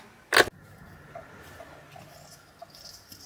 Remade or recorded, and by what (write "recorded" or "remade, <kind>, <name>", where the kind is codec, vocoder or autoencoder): recorded